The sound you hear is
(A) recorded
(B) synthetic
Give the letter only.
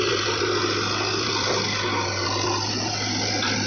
A